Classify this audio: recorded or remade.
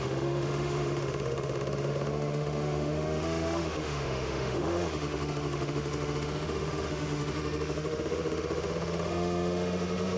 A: remade